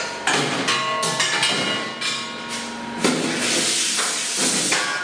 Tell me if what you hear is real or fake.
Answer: real